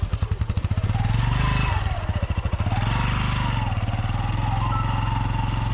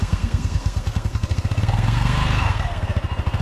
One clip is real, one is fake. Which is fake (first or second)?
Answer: second